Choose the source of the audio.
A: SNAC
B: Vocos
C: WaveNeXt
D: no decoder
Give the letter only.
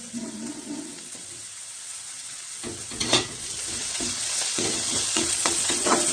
C